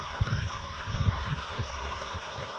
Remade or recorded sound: remade